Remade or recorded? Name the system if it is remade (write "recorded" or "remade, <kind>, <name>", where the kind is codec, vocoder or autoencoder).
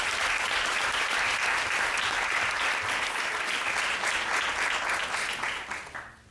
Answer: recorded